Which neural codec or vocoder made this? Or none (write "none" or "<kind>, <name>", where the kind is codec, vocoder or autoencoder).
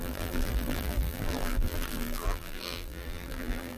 vocoder, BigVGAN v2